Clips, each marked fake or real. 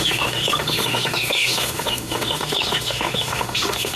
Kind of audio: fake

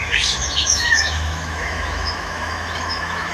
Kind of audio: fake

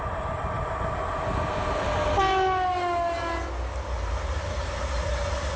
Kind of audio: real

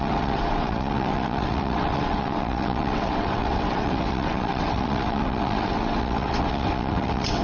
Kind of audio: fake